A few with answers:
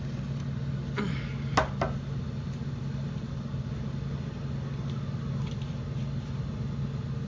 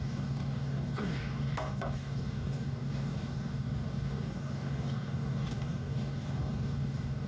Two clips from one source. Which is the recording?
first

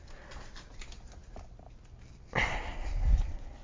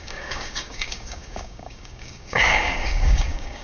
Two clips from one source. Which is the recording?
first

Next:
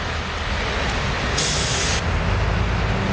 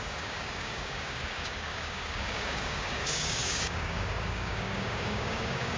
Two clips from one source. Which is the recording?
first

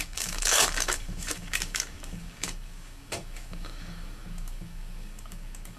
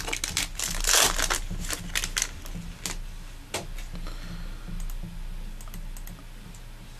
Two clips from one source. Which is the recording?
second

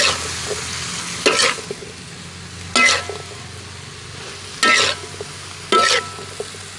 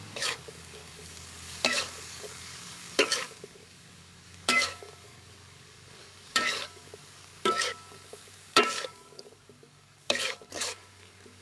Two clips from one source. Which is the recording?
first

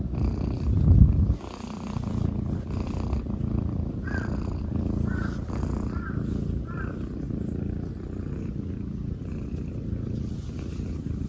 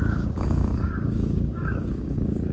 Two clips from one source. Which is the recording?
first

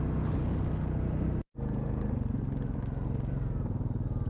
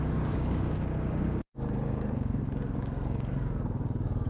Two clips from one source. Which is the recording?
first